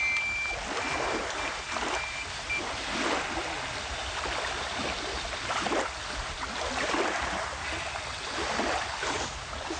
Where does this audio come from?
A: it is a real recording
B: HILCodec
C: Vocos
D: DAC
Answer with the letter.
A